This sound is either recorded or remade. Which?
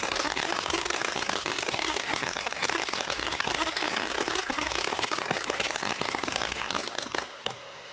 remade